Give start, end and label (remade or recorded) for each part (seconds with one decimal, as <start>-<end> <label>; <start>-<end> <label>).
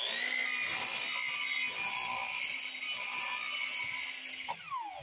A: 0.0-5.0 recorded